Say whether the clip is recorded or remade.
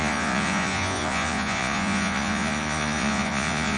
remade